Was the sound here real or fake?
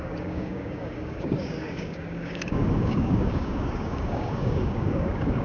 fake